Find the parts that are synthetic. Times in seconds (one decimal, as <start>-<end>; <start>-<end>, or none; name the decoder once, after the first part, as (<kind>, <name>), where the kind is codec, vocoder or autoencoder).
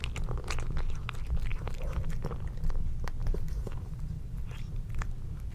1.5-2.1 (vocoder, BigVGAN v2); 3.2-4.9